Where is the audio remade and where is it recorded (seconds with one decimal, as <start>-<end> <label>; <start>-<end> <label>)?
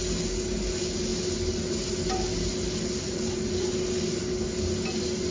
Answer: 0.0-5.3 recorded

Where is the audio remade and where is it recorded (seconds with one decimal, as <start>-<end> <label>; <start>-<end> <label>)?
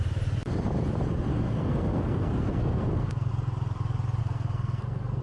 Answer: 0.0-1.3 recorded; 1.3-3.3 remade; 3.3-4.2 recorded; 4.2-5.2 remade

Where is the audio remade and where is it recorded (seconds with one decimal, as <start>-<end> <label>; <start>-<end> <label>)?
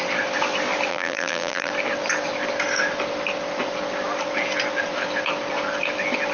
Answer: 0.0-0.9 recorded; 0.9-1.7 remade; 1.7-6.3 recorded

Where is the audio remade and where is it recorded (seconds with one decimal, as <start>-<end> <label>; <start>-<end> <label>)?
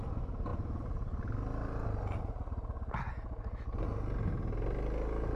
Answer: 0.0-5.4 recorded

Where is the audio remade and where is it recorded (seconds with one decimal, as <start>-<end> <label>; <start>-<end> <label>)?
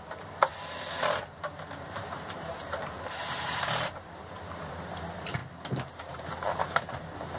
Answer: 0.0-0.5 remade; 0.5-1.4 recorded; 1.4-7.4 remade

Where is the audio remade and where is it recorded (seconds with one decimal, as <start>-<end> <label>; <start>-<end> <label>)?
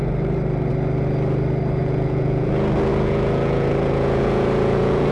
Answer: 0.0-1.8 recorded; 1.8-2.5 remade; 2.5-2.9 recorded; 2.9-5.1 remade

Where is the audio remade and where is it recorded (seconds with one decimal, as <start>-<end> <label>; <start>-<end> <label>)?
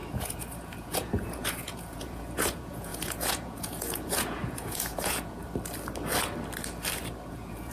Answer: 0.0-5.4 remade; 5.4-7.3 recorded; 7.3-7.7 remade